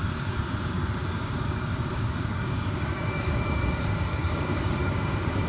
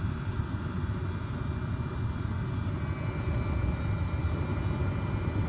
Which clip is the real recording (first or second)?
second